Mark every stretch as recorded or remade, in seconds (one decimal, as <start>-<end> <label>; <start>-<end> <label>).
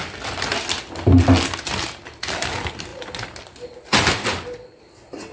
0.0-5.3 recorded